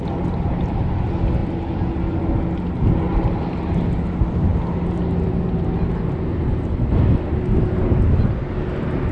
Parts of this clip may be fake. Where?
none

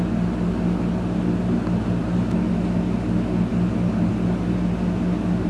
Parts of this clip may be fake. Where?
none

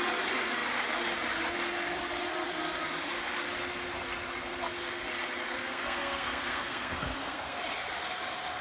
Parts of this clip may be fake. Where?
5.6-7.6 (codec, SNAC)